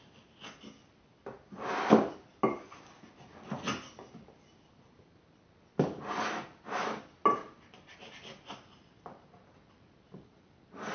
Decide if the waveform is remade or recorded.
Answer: recorded